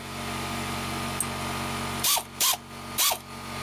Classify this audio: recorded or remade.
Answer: recorded